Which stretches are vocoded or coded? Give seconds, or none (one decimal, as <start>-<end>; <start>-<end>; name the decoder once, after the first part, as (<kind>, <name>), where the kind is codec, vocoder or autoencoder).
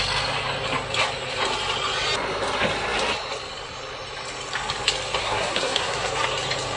5.2-6.1 (codec, SNAC)